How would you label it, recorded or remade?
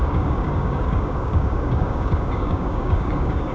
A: remade